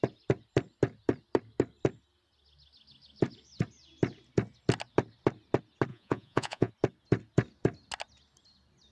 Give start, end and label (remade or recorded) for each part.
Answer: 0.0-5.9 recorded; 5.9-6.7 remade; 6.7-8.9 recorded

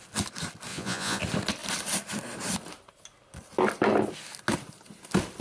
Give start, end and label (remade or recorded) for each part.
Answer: 0.0-0.7 recorded; 0.7-1.2 remade; 1.2-5.4 recorded

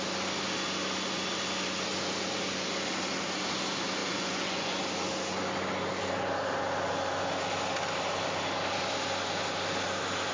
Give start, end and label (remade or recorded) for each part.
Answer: 0.0-4.0 recorded; 4.0-4.8 remade; 4.8-10.3 recorded

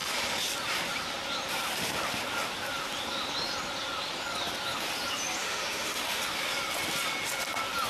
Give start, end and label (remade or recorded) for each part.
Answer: 0.0-5.4 recorded; 5.4-6.2 remade; 6.2-7.9 recorded